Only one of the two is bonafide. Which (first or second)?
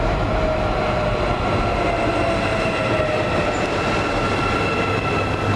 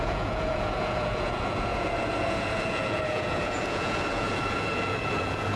first